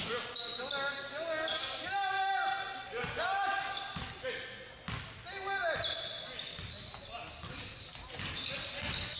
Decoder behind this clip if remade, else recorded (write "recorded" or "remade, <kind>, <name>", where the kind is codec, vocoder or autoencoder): recorded